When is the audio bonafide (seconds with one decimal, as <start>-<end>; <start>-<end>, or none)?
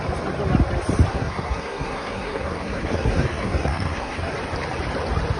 0.0-1.1; 4.3-5.4